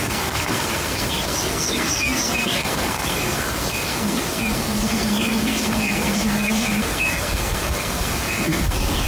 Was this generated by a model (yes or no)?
yes